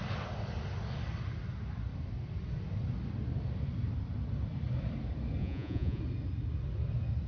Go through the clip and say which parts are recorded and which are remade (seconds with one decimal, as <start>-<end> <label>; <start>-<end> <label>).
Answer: 0.0-5.4 recorded; 5.4-6.0 remade; 6.0-7.3 recorded